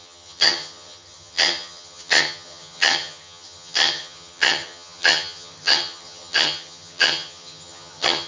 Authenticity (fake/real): fake